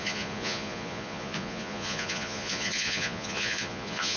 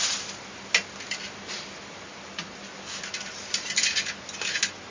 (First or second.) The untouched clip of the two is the second